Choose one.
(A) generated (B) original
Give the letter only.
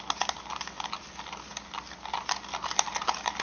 B